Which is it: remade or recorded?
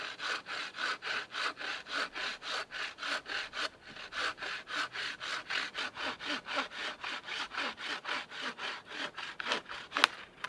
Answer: recorded